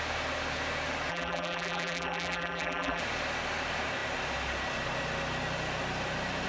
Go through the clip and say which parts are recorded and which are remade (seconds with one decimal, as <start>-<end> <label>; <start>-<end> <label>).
0.0-1.1 recorded; 1.1-3.0 remade; 3.0-6.5 recorded

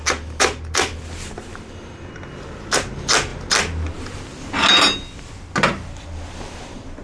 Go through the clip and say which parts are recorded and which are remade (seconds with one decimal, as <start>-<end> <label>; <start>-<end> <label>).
0.0-7.0 recorded

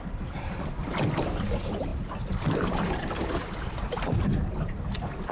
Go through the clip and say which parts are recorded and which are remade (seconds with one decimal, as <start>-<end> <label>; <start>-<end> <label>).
0.0-5.3 recorded

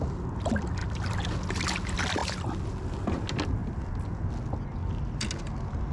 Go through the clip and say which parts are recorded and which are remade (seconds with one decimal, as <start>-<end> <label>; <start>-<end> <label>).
0.0-5.9 recorded

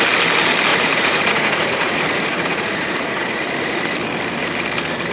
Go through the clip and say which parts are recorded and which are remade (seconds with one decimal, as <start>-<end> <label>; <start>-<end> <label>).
0.0-0.7 recorded; 0.7-3.8 remade; 3.8-5.1 recorded

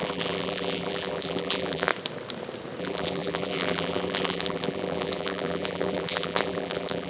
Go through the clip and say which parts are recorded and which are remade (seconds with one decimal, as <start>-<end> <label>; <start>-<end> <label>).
0.0-1.9 remade; 1.9-2.8 recorded; 2.8-7.1 remade

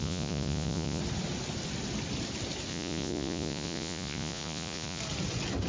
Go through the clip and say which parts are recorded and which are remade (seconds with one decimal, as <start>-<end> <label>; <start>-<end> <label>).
0.0-1.0 remade; 1.0-2.7 recorded; 2.7-5.0 remade; 5.0-5.7 recorded